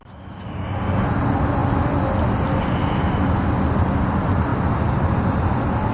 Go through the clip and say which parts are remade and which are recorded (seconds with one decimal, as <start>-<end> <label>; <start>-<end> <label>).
0.0-5.9 recorded